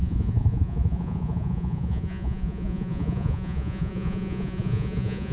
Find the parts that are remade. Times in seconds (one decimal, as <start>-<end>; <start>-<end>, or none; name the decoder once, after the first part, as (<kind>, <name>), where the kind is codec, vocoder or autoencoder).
0.0-5.3 (vocoder, Vocos)